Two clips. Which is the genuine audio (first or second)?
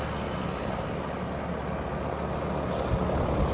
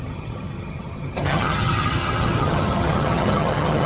first